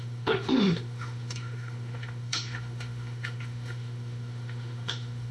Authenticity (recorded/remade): remade